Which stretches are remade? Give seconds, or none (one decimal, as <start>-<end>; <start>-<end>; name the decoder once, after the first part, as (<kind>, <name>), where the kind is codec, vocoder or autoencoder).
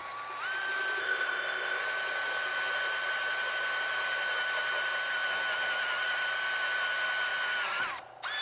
1.0-1.8 (codec, ZipCodec)